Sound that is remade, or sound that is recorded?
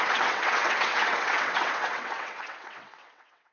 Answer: remade